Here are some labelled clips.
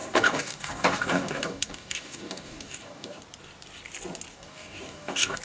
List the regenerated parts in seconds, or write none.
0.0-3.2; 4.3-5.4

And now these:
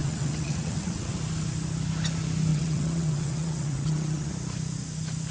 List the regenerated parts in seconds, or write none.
0.0-1.1; 2.5-4.3

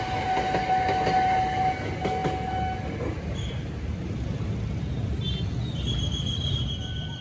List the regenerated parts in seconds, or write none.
none

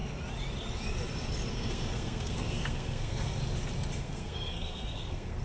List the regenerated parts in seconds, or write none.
1.5-3.4; 4.0-5.4

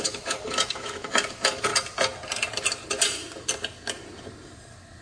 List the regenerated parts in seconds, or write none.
0.0-1.7

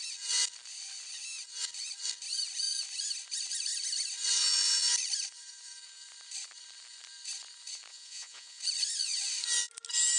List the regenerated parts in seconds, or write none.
7.9-8.6

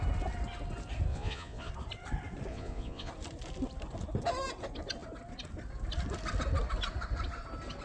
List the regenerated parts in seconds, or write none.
1.1-1.7; 2.5-3.1